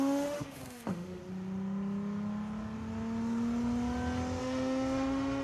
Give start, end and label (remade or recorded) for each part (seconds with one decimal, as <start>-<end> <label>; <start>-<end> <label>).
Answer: 0.0-1.2 remade; 1.2-4.4 recorded; 4.4-5.4 remade